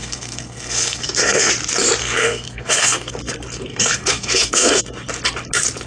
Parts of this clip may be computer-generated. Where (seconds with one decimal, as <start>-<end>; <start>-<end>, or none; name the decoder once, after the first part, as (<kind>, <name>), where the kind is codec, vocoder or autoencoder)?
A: 0.0-1.5 (codec, SNAC); 2.0-3.1; 3.7-4.8